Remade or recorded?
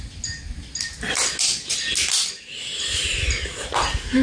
recorded